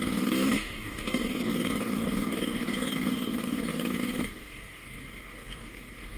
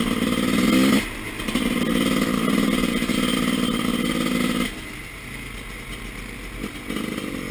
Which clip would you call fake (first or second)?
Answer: first